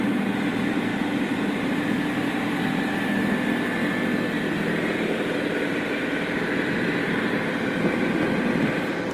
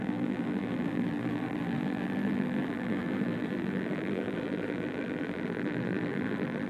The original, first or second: first